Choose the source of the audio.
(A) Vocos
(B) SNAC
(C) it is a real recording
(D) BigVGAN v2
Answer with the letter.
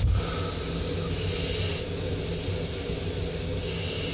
C